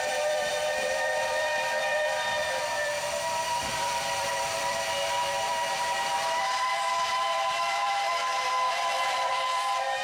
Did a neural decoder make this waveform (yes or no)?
yes